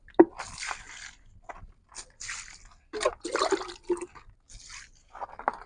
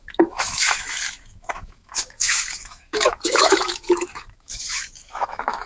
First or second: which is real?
first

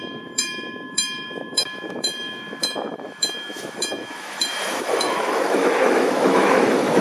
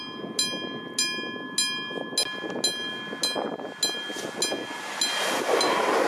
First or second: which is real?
second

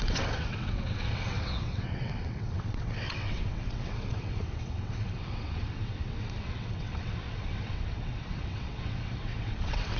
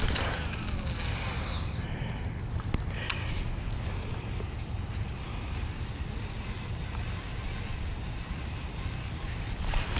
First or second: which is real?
second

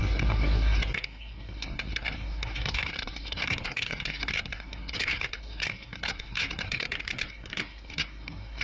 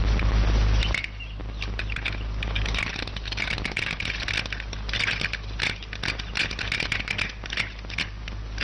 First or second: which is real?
second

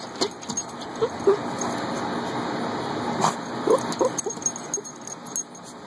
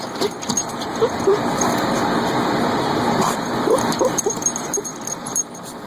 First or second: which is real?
first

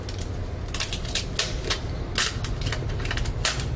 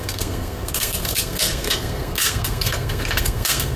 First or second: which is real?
first